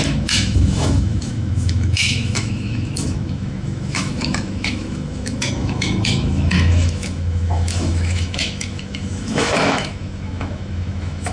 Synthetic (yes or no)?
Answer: yes